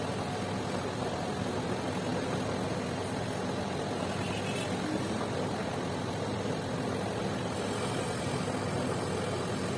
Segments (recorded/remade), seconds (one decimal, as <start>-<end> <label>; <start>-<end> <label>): 0.0-9.8 recorded